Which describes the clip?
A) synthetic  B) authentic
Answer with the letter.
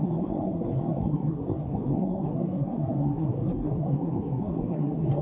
A